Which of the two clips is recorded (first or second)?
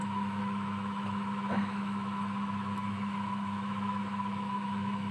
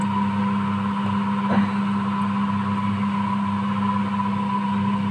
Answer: second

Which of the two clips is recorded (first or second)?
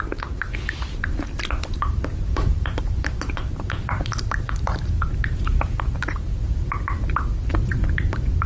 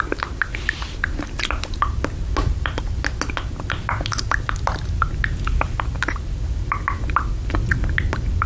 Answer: second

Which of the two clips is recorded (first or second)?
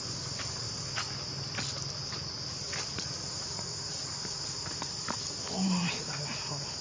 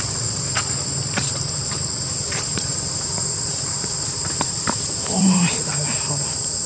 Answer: first